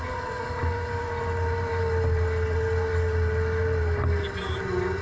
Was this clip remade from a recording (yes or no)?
no